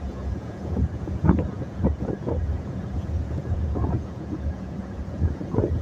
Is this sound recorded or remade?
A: remade